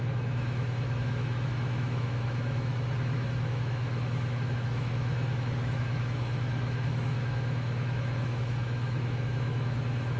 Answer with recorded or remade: remade